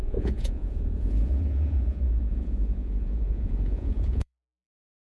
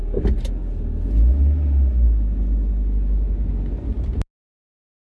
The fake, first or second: first